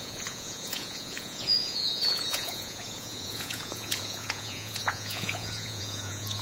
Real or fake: fake